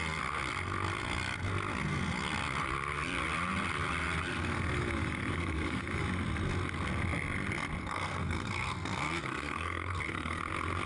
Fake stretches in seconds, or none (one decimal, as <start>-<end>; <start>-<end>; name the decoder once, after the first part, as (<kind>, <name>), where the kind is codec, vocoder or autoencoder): 4.3-4.8 (codec, SNAC); 5.2-5.8; 7.8-10.4